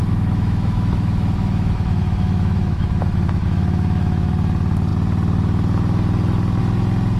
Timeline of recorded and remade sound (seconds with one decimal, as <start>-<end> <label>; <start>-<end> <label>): 0.0-4.3 remade; 4.3-7.2 recorded